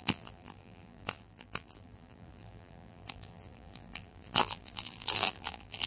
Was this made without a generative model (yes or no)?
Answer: no